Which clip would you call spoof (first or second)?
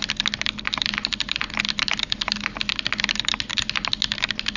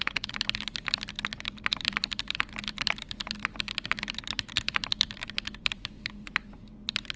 second